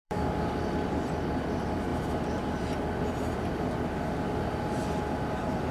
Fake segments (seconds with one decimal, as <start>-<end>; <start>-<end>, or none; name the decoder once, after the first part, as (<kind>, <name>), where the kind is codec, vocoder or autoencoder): 0.0-0.6 (codec, DAC)